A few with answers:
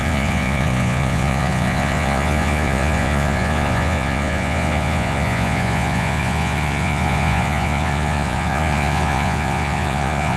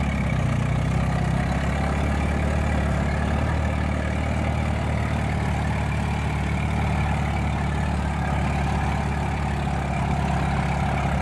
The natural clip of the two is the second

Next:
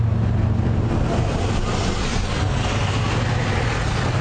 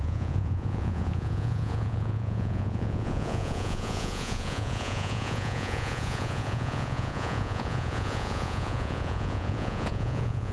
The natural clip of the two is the first